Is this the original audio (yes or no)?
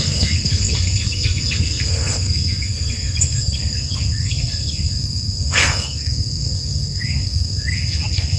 no